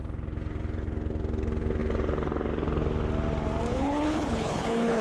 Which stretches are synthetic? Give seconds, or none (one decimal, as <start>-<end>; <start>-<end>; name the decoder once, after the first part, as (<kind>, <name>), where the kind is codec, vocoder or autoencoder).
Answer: 3.7-5.0 (codec, HILCodec)